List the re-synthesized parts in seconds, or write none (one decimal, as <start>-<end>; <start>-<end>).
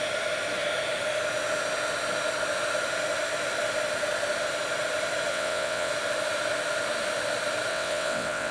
5.3-5.9; 7.7-8.5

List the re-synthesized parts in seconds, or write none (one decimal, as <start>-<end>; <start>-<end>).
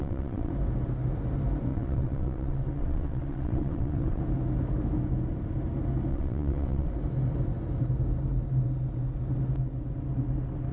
0.0-0.5; 1.7-4.2; 6.1-6.9